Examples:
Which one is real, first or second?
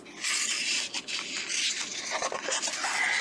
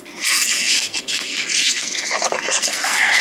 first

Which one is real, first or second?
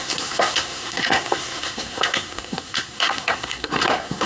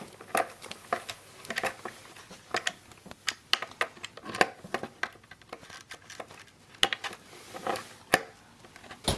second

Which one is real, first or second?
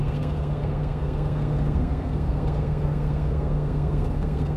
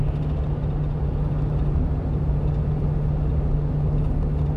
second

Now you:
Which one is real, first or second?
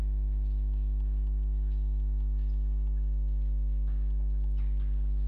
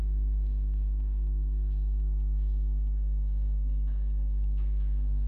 first